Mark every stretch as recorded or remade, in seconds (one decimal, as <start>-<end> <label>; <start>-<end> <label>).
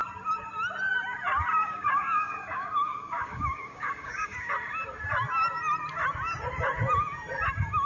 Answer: 0.0-1.5 recorded; 1.5-4.5 remade; 4.5-7.9 recorded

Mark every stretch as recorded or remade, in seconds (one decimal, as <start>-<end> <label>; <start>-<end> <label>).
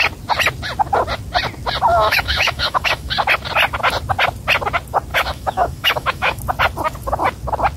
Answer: 0.0-1.9 recorded; 1.9-3.1 remade; 3.1-5.1 recorded; 5.1-6.4 remade; 6.4-7.8 recorded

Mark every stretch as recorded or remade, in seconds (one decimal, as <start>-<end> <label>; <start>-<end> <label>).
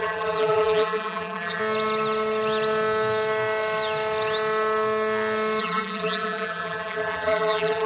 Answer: 0.0-1.6 remade; 1.6-5.6 recorded; 5.6-7.9 remade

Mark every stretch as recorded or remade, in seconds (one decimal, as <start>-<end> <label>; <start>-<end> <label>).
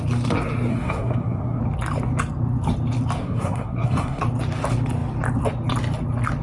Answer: 0.0-0.7 recorded; 0.7-1.6 remade; 1.6-3.2 recorded; 3.2-4.2 remade; 4.2-6.4 recorded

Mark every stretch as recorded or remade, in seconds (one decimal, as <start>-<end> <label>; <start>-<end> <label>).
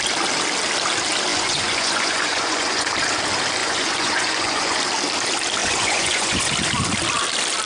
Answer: 0.0-1.3 recorded; 1.3-2.9 remade; 2.9-3.6 recorded; 3.6-4.8 remade; 4.8-5.6 recorded; 5.6-6.5 remade; 6.5-7.7 recorded